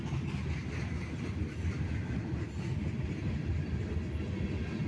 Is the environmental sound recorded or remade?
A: recorded